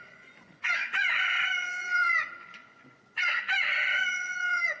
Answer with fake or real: fake